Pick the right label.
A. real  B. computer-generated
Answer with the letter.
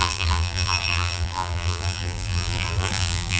B